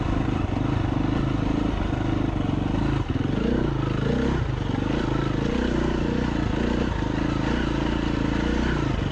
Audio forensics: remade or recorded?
recorded